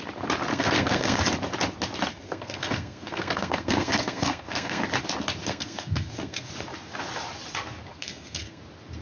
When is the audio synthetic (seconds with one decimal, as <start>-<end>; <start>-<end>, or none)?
0.5-1.2; 2.1-4.8; 5.4-6.5; 7.9-8.6